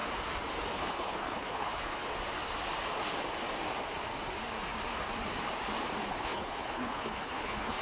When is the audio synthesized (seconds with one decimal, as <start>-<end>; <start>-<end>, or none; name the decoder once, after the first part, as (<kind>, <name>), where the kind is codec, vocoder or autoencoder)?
0.7-2.1 (codec, HILCodec); 6.1-7.8